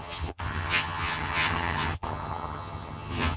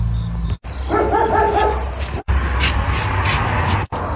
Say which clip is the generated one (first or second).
first